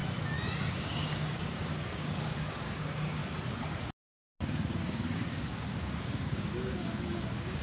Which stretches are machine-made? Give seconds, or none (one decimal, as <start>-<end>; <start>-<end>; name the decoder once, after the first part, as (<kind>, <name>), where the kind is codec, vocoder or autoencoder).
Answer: 0.7-3.2 (codec, DAC); 4.8-7.6